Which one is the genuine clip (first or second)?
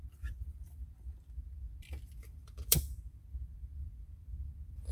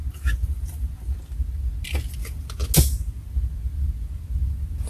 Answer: second